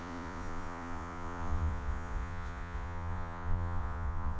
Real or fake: fake